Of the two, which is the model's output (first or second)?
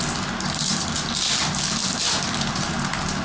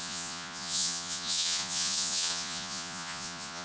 second